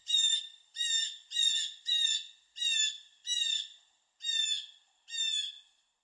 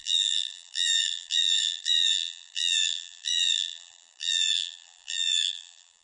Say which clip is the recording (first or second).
first